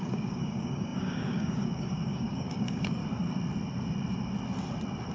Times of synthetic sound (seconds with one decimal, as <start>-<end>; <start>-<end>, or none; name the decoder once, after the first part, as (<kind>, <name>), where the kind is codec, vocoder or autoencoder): 0.0-3.0 (codec, DAC)